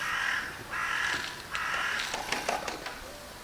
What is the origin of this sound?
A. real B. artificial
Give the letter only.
A